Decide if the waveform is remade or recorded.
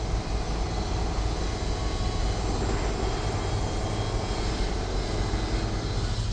recorded